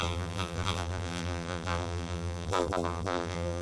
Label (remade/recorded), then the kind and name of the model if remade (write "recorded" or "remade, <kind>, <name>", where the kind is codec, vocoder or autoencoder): remade, vocoder, BigVGAN v2